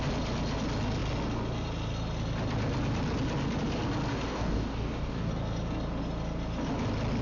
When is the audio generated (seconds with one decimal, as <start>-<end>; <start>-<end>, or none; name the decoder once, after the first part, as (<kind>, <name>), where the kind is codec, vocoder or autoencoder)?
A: 4.1-5.3 (codec, DAC)